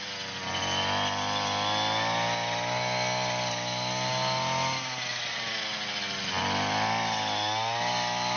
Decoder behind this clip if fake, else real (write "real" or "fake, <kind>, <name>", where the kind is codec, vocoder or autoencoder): real